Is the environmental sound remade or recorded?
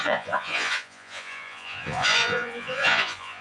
remade